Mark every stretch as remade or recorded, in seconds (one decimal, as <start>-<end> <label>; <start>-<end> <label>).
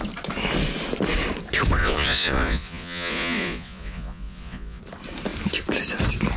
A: 0.0-1.8 recorded; 1.8-4.8 remade; 4.8-6.4 recorded